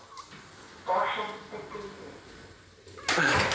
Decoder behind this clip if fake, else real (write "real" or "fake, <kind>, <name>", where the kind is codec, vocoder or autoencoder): real